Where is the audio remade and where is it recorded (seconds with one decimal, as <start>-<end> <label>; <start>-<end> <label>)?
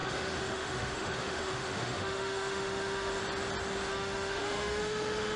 0.0-3.2 remade; 3.2-3.9 recorded; 3.9-5.4 remade